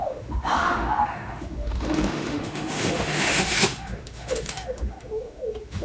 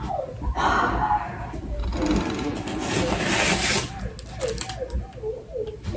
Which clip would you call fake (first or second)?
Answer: first